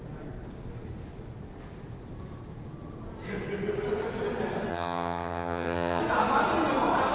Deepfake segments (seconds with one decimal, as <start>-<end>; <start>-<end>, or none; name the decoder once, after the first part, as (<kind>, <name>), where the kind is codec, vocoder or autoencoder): 4.7-6.0 (vocoder, HiFi-GAN)